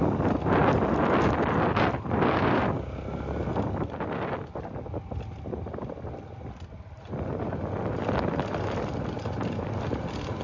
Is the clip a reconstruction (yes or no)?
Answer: no